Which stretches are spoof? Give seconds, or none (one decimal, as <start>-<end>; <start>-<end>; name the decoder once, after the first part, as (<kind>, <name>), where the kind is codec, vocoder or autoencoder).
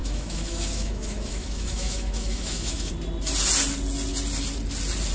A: 0.0-2.9 (autoencoder, DAC-VAE)